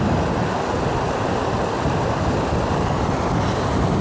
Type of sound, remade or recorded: recorded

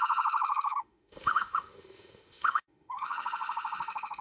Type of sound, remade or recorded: remade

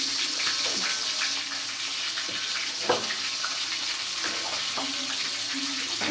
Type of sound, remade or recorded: recorded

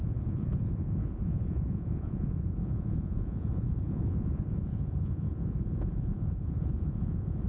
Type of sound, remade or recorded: remade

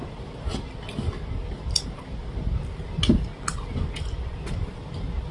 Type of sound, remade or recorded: recorded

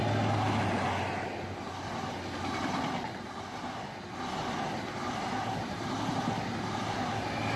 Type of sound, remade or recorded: recorded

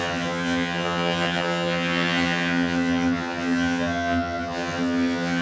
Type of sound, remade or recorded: remade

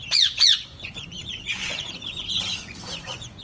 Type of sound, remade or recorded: remade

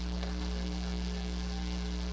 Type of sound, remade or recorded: remade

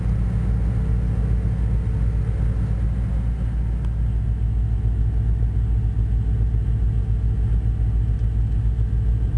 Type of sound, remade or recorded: recorded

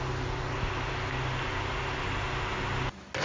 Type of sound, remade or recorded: recorded